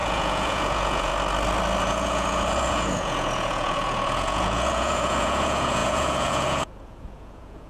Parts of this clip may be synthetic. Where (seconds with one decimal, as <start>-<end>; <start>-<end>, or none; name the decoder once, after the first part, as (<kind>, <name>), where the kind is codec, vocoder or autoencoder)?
0.0-1.1 (vocoder, Vocos); 1.8-7.7